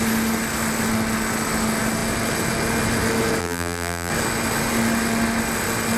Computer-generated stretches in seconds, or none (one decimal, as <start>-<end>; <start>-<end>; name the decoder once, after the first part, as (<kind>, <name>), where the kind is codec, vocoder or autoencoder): 3.4-4.1 (vocoder, BigVGAN v2)